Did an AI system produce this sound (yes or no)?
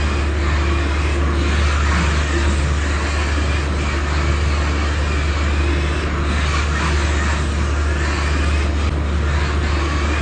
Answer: no